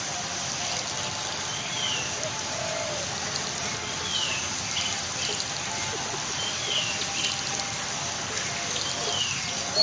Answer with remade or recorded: recorded